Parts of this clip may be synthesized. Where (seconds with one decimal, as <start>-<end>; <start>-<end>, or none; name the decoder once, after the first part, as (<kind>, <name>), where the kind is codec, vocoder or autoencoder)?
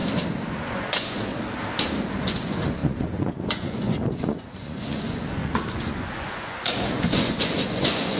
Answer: 0.5-1.3 (vocoder, Vocos); 2.1-8.2